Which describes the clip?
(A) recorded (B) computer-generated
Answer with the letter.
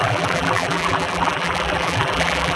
B